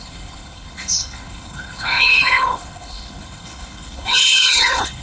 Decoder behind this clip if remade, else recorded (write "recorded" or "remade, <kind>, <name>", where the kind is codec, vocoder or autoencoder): remade, codec, HILCodec